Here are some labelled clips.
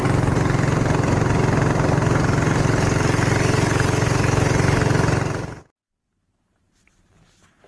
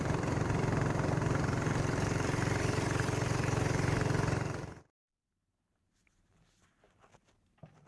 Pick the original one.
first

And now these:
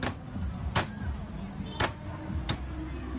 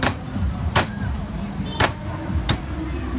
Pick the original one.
first